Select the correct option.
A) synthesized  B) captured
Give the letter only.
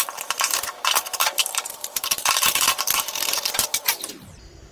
A